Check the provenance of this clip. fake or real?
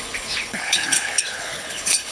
fake